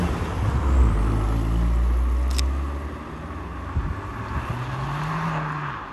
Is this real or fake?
real